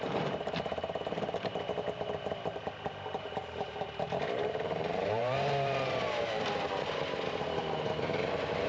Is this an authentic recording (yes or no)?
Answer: no